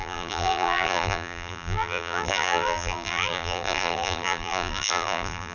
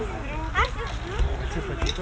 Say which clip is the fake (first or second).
first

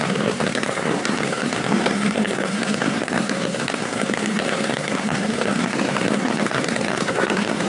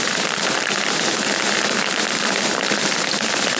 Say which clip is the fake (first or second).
first